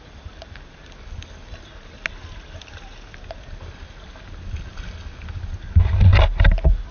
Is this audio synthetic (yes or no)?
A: no